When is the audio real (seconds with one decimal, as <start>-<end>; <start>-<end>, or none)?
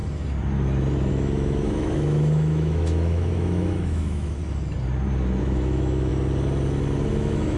0.0-1.1; 4.4-5.4; 6.1-7.1